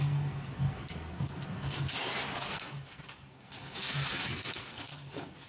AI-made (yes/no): yes